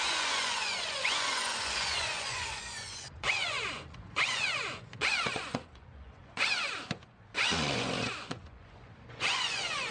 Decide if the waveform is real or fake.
fake